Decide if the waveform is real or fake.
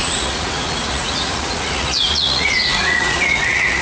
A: fake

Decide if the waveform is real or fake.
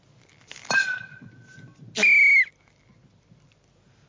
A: real